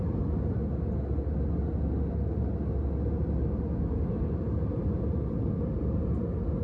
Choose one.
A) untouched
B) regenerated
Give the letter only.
A